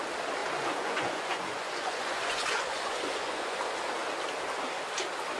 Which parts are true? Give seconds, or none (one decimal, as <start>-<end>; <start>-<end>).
0.0-0.4; 3.6-5.4